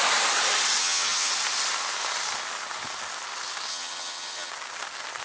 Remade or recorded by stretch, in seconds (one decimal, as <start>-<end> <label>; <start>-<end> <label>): 0.0-0.8 recorded; 0.8-1.3 remade; 1.3-3.7 recorded; 3.7-4.5 remade; 4.5-5.2 recorded